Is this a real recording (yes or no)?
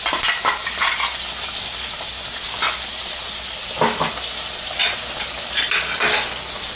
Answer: yes